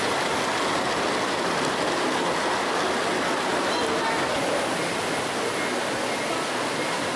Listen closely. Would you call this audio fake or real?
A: real